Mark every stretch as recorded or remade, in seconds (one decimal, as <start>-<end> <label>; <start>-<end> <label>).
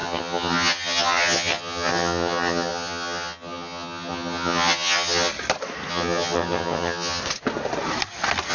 0.0-5.3 remade; 5.3-5.9 recorded; 5.9-7.2 remade; 7.2-8.5 recorded